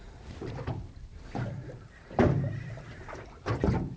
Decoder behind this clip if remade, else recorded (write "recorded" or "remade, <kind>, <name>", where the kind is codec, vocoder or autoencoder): remade, vocoder, BigVGAN v2